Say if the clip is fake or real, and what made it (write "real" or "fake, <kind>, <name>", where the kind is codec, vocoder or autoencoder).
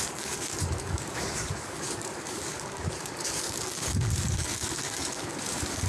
fake, codec, DAC